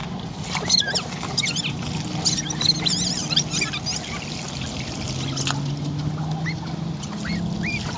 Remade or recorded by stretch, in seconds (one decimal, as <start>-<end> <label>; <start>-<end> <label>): 0.0-8.0 recorded